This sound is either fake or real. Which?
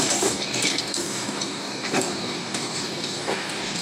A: fake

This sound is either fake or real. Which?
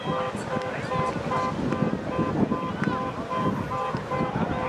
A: real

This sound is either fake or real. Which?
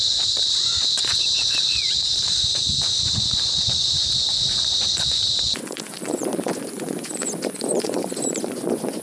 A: fake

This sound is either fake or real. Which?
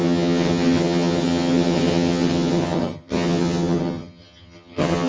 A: fake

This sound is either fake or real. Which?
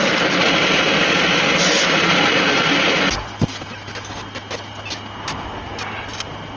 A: real